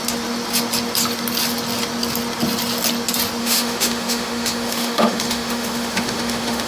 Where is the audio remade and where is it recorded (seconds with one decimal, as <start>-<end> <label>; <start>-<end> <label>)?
0.0-3.4 recorded; 3.4-6.7 remade